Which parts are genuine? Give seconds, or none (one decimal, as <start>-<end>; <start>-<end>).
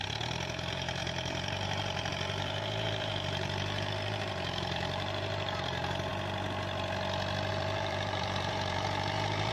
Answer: 6.1-7.5